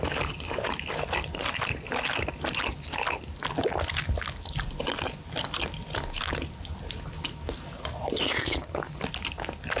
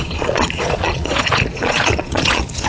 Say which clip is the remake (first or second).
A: second